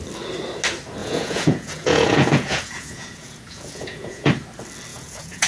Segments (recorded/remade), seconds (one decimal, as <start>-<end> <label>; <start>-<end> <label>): 0.0-1.0 recorded; 1.0-4.3 remade; 4.3-4.9 recorded; 4.9-5.5 remade